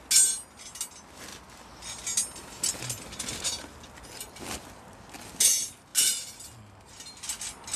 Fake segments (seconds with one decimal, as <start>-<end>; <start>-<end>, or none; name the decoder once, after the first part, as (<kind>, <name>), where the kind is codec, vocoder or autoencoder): none